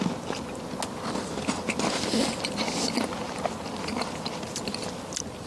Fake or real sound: real